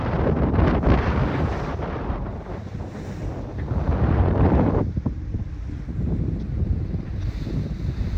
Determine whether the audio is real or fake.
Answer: fake